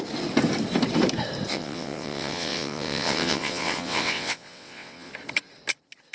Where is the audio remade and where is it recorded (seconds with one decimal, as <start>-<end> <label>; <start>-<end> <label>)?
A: 0.0-1.5 recorded; 1.5-5.1 remade; 5.1-6.1 recorded